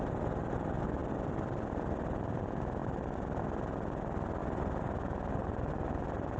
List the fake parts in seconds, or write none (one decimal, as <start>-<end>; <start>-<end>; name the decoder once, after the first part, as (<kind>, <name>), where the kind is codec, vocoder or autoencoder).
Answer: 1.0-2.4 (vocoder, BigVGAN v2); 2.8-3.4